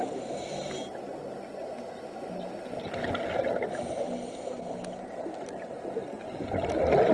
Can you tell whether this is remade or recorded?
recorded